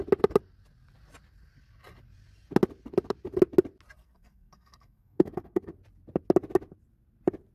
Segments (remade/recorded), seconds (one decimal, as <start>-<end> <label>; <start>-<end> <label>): 0.0-4.0 recorded; 4.0-5.7 remade; 5.7-7.5 recorded